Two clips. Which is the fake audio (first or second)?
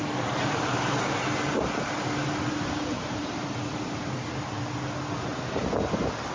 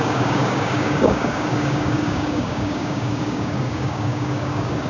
second